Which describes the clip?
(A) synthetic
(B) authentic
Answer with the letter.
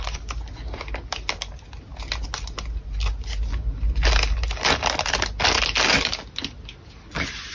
B